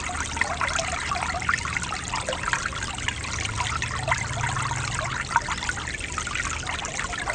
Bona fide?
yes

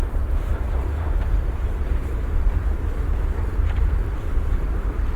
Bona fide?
no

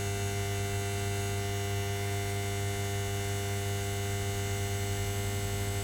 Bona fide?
yes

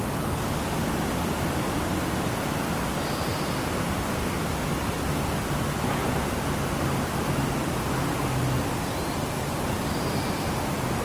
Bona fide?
yes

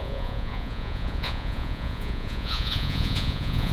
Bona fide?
no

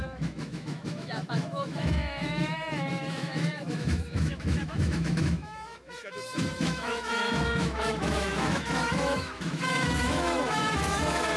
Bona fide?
no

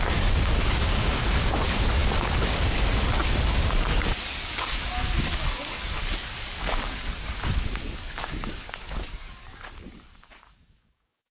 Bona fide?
no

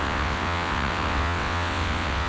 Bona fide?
no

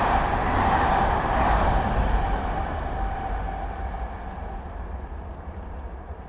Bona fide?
yes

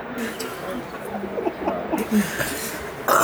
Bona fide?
yes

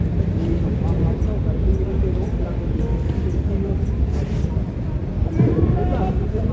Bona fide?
yes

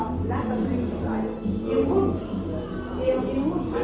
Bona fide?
yes